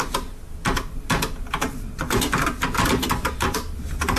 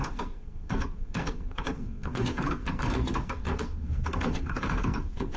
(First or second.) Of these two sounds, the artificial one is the second